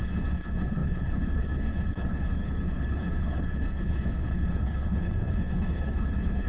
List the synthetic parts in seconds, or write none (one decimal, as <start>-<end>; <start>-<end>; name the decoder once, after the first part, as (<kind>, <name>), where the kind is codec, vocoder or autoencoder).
0.0-6.5 (codec, HILCodec)